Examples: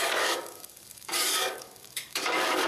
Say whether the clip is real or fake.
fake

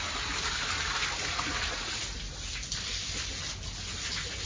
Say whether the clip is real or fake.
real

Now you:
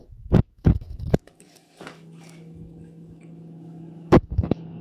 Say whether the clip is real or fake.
fake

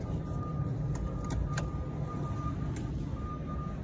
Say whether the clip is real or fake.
real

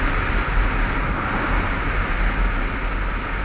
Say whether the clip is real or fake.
real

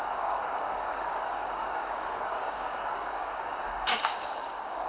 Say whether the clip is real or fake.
fake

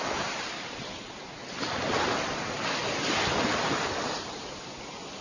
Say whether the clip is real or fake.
real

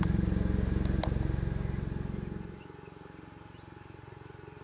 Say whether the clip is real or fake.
real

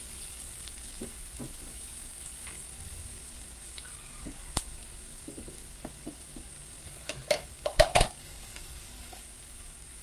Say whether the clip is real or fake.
fake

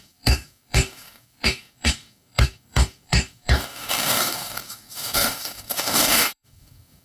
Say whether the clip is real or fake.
fake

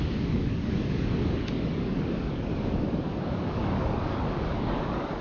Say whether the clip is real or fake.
fake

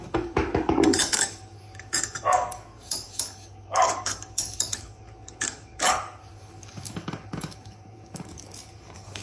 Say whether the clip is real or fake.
fake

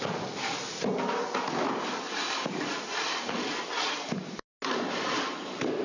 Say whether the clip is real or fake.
real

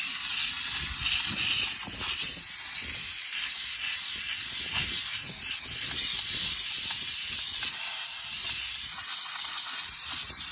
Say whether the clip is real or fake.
real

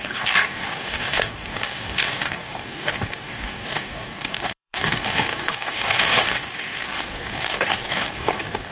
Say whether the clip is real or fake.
fake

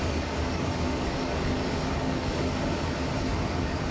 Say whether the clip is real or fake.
fake